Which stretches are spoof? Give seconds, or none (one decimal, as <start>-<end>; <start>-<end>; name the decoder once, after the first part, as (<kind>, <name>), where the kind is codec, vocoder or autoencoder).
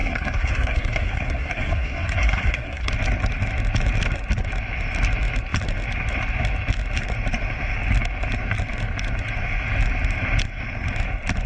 0.0-2.9 (codec, SNAC)